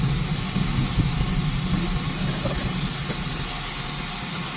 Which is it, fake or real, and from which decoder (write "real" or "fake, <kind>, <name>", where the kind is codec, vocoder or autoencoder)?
real